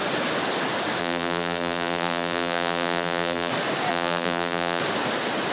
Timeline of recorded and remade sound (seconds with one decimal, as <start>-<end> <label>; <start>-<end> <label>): 0.0-1.0 recorded; 1.0-3.5 remade; 3.5-3.9 recorded; 3.9-4.8 remade; 4.8-5.5 recorded

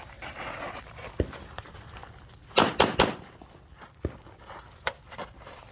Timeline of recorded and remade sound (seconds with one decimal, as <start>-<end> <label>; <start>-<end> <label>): 0.0-2.0 remade; 2.0-4.5 recorded; 4.5-5.7 remade